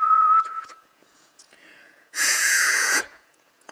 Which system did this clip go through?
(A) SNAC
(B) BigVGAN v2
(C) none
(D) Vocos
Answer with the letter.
D